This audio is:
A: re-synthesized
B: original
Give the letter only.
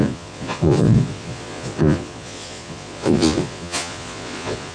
A